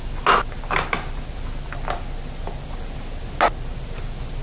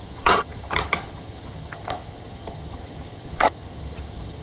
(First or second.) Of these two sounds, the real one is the first